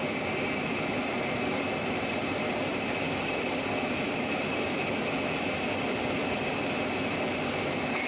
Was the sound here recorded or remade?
recorded